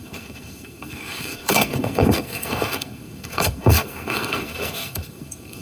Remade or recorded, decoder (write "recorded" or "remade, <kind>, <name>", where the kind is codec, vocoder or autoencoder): remade, codec, SNAC